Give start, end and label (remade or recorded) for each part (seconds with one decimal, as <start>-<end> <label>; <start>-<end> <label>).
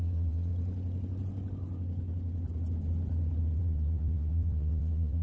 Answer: 0.0-0.5 remade; 0.5-3.6 recorded; 3.6-5.2 remade